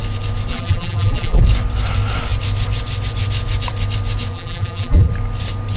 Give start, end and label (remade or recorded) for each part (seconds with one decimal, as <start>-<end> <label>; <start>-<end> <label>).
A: 0.0-0.5 recorded; 0.5-1.4 remade; 1.4-4.3 recorded; 4.3-5.1 remade; 5.1-5.8 recorded